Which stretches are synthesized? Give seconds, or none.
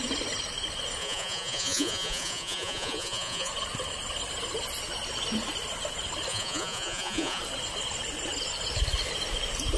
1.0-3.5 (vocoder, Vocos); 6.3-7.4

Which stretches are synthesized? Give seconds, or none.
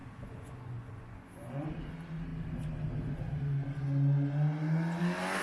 0.0-1.7 (vocoder, Vocos)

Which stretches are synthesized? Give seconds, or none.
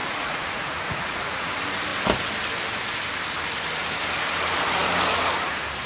0.0-1.5 (vocoder, Vocos)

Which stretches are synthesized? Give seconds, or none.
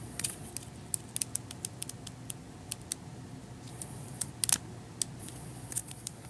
0.0-0.5 (vocoder, Vocos); 3.7-4.3; 5.2-6.3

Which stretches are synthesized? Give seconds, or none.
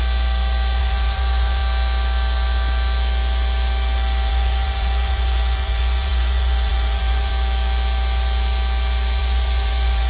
0.8-1.6 (vocoder, Vocos); 4.3-7.3; 9.2-10.1